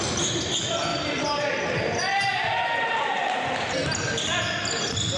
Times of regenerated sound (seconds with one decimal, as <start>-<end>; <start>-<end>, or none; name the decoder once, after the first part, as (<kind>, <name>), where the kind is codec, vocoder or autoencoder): 0.9-4.0 (vocoder, BigVGAN v2)